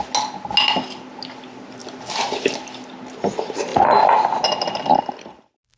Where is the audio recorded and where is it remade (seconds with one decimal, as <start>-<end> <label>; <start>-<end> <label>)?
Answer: 0.0-5.8 recorded